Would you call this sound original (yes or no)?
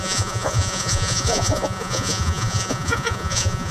no